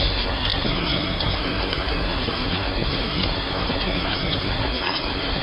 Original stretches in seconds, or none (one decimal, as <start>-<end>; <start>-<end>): none